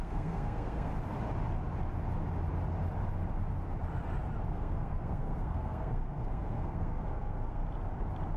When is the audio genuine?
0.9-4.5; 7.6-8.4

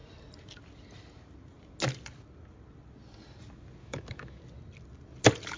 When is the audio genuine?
0.0-3.8; 4.4-5.6

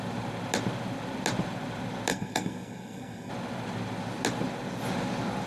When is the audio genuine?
0.0-2.1; 3.3-5.5

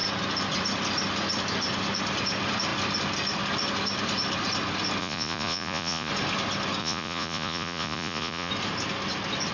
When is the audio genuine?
0.0-5.0; 6.1-6.8; 8.5-9.5

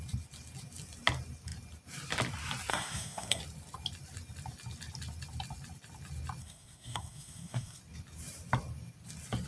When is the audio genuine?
0.0-2.7; 3.4-6.4; 7.8-9.5

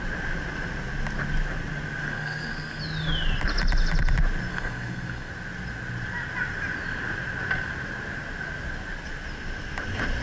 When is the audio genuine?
0.0-2.0; 2.8-4.5; 5.3-10.2

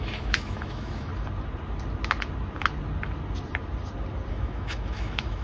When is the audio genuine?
1.1-4.3

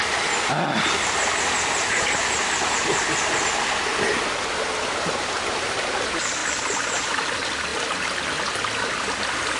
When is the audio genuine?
0.0-9.6